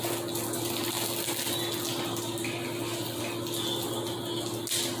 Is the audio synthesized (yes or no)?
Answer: no